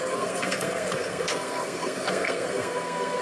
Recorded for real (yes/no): no